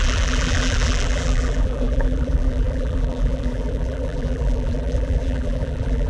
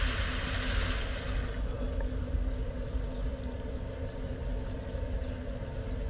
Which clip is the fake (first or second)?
first